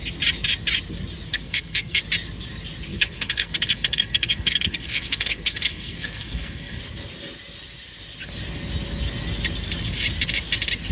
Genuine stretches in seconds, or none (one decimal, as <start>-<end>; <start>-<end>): 0.0-1.3; 2.0-2.9; 6.8-10.9